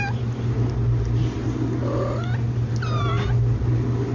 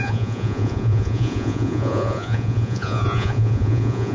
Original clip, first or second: first